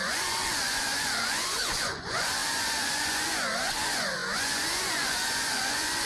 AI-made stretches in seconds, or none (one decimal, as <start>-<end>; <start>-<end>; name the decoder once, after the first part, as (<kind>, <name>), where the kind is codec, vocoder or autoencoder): 0.0-6.1 (vocoder, Vocos)